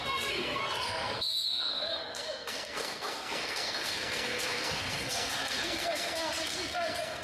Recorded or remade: remade